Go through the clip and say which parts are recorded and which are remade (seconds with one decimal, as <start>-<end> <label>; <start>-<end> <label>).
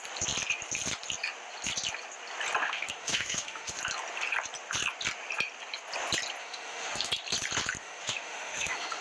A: 0.0-2.6 recorded; 2.6-3.8 remade; 3.8-6.4 recorded; 6.4-7.1 remade; 7.1-7.8 recorded; 7.8-9.0 remade